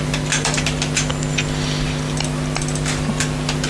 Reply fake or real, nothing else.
real